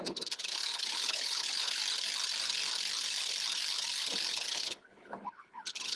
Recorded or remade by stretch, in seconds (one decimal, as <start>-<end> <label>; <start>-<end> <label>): 0.0-1.8 remade; 1.8-4.4 recorded; 4.4-6.0 remade